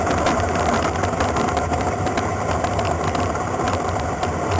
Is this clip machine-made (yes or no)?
yes